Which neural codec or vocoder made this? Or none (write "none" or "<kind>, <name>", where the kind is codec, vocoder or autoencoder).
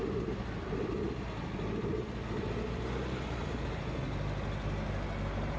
none